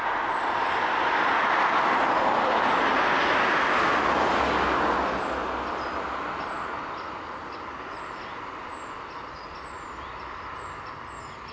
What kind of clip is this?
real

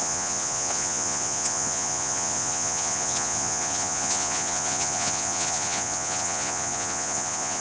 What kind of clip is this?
fake